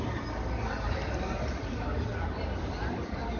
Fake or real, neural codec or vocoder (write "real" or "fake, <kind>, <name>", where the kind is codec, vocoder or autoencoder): real